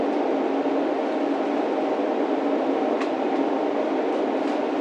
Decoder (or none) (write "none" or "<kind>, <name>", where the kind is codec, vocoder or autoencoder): none